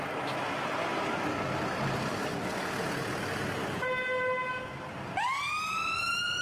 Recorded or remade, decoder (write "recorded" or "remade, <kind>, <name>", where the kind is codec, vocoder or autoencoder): recorded